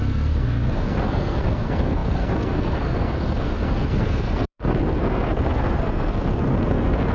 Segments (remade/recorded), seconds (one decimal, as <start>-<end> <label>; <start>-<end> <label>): 0.0-7.1 remade